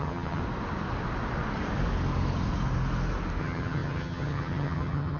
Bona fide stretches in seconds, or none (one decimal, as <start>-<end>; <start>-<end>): 0.4-3.4